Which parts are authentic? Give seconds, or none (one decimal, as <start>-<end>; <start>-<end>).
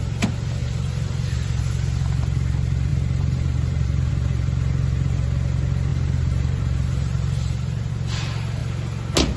0.0-0.6; 1.6-2.9; 4.1-5.9; 7.9-9.4